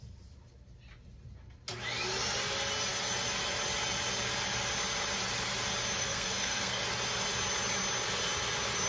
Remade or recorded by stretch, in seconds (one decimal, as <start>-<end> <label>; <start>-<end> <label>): 0.0-6.0 recorded; 6.0-6.8 remade; 6.8-8.9 recorded